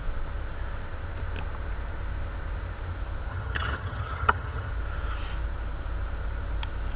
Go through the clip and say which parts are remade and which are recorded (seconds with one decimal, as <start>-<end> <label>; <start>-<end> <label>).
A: 0.0-3.3 recorded; 3.3-4.7 remade; 4.7-7.0 recorded